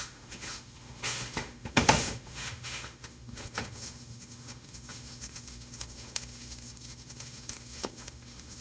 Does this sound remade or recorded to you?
remade